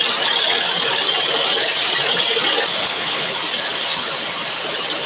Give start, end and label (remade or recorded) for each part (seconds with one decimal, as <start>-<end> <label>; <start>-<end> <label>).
0.0-2.8 recorded; 2.8-3.3 remade; 3.3-5.1 recorded